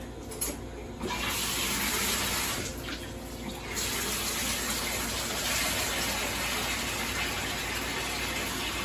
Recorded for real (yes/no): yes